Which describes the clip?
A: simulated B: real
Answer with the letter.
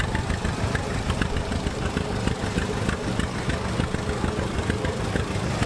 B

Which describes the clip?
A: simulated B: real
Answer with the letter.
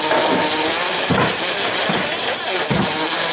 B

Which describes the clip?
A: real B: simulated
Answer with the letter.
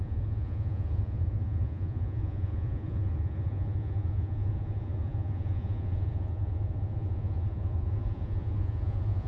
B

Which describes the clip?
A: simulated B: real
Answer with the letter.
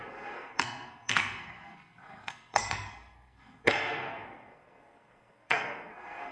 A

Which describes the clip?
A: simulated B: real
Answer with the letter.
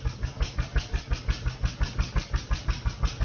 B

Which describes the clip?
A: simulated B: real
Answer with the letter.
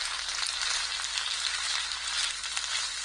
B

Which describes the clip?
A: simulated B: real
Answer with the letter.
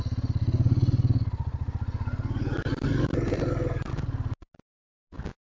B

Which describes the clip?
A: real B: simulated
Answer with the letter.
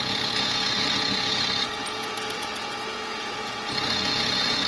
B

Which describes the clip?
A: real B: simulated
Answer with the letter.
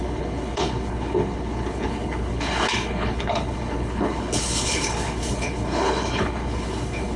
B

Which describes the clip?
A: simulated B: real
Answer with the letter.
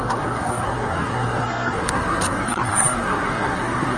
A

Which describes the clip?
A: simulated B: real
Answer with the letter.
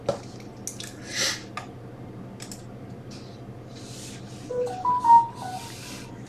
B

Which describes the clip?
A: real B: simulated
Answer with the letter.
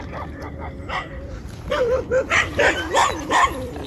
B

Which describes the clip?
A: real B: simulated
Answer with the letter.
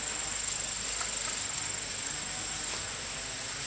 A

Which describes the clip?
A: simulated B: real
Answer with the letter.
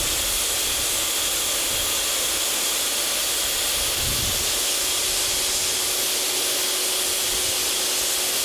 B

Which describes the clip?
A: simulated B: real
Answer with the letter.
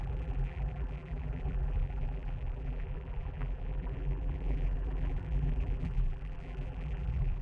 A